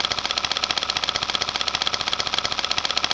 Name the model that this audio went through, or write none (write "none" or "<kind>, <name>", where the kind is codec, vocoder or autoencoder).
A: none